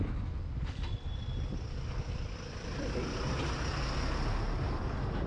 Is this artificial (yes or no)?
no